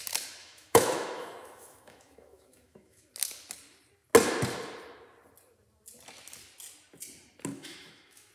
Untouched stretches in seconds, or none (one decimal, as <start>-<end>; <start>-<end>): 0.0-0.4; 3.1-7.5